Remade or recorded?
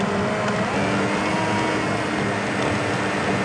recorded